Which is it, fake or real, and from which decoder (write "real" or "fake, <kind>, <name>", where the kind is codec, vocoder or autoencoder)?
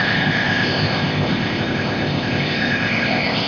fake, codec, ZipCodec